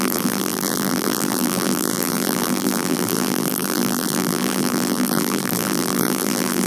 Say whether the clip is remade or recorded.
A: remade